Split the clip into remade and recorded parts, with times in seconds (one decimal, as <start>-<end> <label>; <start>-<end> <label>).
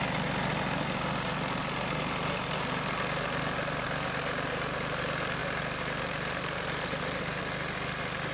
0.0-8.3 recorded